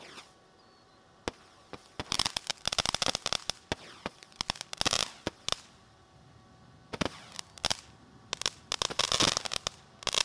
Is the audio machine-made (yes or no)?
no